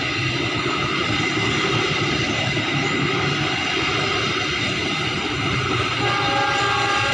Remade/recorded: recorded